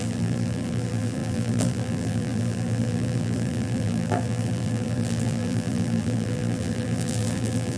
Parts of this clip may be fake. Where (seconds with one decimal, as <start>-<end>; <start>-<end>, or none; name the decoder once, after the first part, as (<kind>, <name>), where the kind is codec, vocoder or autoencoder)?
0.0-7.8 (vocoder, BigVGAN v2)

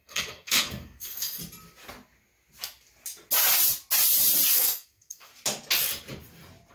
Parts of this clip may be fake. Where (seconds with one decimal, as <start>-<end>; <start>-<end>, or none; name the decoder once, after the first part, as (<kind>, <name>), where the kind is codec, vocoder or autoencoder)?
0.0-1.4 (codec, SNAC); 4.5-5.3

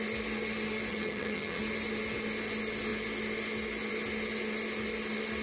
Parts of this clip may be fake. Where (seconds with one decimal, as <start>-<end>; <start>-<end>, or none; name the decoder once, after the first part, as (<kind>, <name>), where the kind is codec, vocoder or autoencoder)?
0.9-1.6 (vocoder, HiFi-GAN)

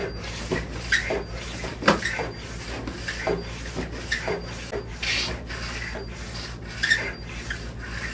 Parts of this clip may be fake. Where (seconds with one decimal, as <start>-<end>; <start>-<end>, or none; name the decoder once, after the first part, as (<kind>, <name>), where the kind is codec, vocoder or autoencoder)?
none

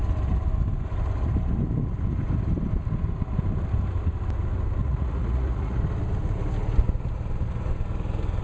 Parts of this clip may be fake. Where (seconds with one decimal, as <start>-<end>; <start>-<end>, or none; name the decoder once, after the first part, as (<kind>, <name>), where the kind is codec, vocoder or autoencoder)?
4.8-5.8 (vocoder, Vocos)

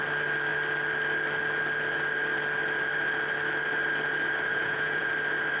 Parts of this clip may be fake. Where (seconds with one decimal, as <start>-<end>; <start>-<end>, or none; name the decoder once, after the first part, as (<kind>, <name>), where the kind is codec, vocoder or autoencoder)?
4.5-5.1 (vocoder, Vocos)

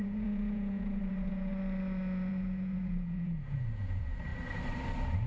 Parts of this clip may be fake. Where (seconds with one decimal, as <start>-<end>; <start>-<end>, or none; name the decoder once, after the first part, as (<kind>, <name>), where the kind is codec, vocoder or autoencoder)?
0.0-1.5 (vocoder, Vocos); 2.3-4.3

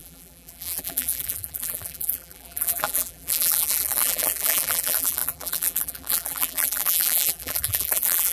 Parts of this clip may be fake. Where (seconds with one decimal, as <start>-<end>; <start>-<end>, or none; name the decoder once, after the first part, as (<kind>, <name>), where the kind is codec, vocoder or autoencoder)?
0.0-8.3 (vocoder, BigVGAN v2)